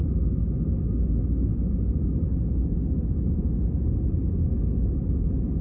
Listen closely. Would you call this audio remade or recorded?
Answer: recorded